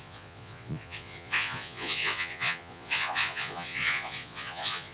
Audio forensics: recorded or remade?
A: remade